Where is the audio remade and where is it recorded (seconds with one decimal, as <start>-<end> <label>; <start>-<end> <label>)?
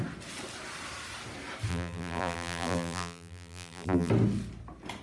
0.0-1.7 recorded; 1.7-4.1 remade; 4.1-5.0 recorded